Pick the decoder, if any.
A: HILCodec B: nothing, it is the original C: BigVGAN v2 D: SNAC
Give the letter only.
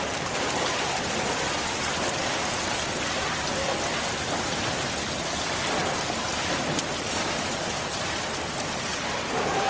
B